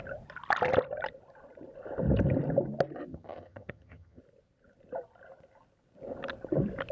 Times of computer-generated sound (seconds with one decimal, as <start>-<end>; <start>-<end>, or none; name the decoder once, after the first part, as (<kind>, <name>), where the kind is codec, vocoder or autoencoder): 3.1-4.2 (vocoder, HiFi-GAN)